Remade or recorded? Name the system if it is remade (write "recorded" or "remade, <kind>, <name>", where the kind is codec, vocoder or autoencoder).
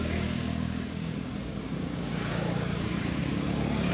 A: remade, codec, DAC